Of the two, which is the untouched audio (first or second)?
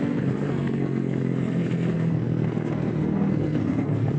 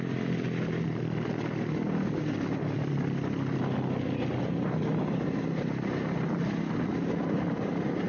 second